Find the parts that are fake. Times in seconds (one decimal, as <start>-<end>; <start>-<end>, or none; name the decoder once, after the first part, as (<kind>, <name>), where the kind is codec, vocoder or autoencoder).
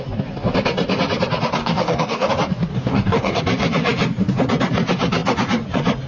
1.6-2.3 (codec, DAC); 2.7-3.4